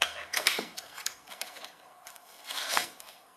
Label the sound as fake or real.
fake